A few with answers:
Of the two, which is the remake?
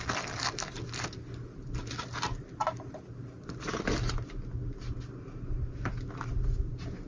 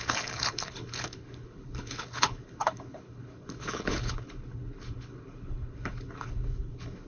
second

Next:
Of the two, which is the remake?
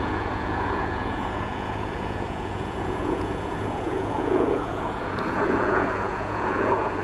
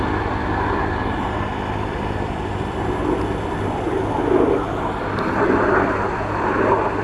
first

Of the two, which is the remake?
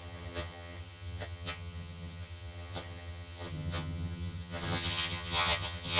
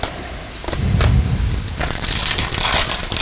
first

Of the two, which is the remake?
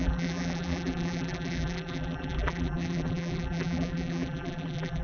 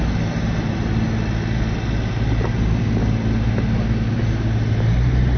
first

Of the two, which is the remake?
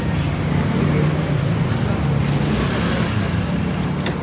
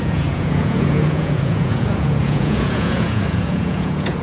second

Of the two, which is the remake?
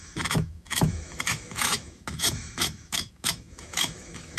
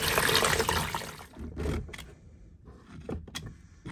first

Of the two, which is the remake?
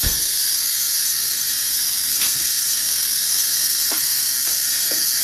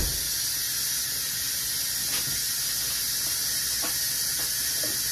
first